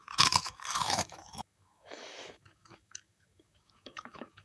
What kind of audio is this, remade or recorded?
remade